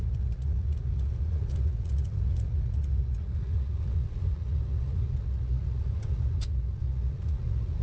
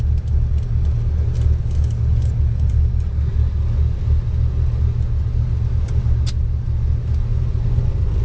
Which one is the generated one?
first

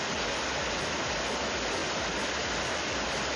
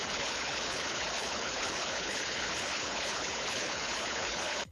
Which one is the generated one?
second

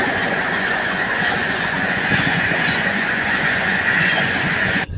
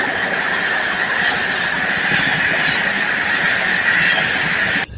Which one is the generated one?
first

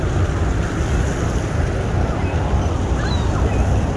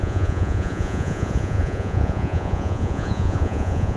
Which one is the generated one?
second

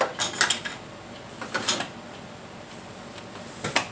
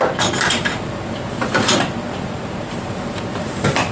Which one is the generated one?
second